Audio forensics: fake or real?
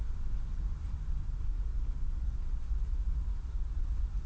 real